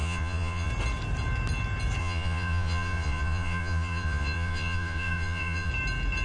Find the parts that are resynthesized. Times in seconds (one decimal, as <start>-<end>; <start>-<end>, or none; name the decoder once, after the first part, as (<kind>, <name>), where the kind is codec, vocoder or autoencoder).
0.0-0.7 (vocoder, Vocos); 2.0-5.7